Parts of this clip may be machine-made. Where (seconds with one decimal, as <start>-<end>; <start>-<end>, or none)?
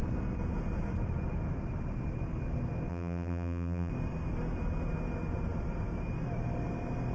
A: 2.9-3.9